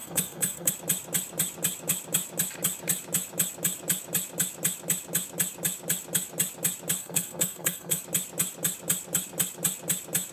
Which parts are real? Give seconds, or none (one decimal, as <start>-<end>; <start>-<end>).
0.7-7.0; 8.0-10.3